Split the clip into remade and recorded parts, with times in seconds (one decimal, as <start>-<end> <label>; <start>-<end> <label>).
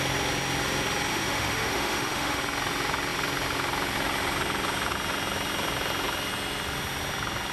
0.0-1.1 recorded; 1.1-2.4 remade; 2.4-7.5 recorded